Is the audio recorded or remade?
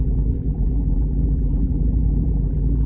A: remade